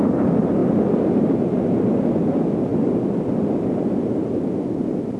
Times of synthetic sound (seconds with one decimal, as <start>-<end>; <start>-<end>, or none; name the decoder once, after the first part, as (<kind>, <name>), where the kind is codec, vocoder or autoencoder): none

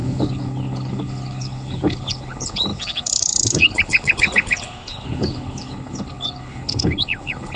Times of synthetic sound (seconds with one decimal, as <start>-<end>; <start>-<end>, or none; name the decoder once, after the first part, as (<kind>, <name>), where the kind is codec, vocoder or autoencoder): 0.0-7.6 (codec, HILCodec)

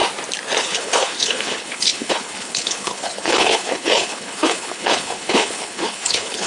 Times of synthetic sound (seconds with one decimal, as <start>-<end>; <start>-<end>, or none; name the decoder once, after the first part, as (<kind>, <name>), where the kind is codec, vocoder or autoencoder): 0.6-6.5 (codec, HILCodec)

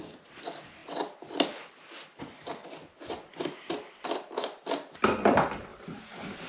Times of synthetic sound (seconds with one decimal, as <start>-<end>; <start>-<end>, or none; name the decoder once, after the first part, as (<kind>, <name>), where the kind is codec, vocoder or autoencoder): none

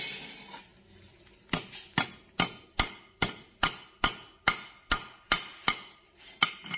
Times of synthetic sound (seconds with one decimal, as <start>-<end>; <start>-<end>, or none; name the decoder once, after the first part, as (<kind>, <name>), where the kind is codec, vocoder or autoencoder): none

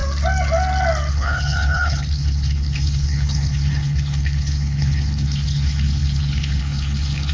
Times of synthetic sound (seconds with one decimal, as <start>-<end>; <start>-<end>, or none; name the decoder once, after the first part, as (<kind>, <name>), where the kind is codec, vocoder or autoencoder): 1.1-7.3 (codec, HILCodec)